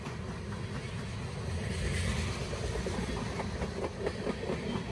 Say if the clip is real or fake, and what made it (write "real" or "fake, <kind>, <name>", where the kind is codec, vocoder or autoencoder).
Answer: real